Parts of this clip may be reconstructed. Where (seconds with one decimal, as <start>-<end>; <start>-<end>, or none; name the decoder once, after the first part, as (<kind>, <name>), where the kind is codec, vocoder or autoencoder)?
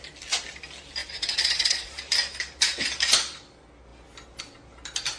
1.0-1.9 (vocoder, Vocos)